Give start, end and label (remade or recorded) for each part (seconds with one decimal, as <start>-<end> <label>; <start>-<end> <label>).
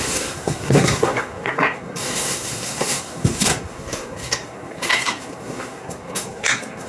0.0-6.9 remade